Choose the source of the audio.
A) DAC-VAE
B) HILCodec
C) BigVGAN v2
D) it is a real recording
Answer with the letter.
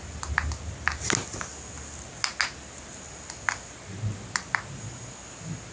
D